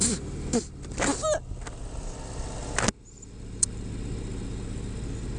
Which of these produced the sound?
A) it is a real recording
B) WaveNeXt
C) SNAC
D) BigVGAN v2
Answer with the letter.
A